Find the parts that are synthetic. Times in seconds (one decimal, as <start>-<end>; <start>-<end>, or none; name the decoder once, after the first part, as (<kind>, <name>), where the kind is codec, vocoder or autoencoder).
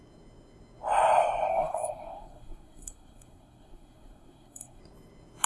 1.5-4.8 (codec, SNAC)